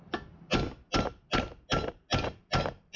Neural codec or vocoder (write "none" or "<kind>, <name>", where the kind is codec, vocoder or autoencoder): none